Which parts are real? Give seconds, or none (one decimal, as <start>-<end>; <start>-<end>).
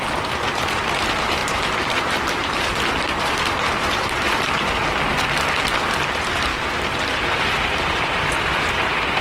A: 4.8-6.1; 6.5-7.5